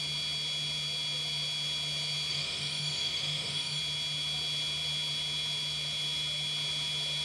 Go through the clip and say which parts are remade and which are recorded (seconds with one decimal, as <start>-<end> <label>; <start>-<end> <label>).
0.0-2.3 recorded; 2.3-3.8 remade; 3.8-7.2 recorded